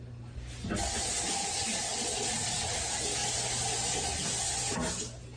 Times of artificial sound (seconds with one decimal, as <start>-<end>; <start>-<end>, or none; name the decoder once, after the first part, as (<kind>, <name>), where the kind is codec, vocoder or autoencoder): 1.9-2.8 (vocoder, WaveNeXt)